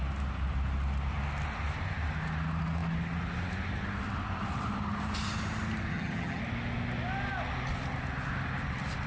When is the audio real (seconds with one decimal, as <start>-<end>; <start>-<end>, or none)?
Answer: 0.0-5.9; 6.4-9.1